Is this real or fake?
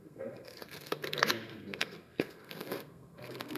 fake